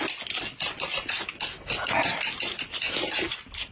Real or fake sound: real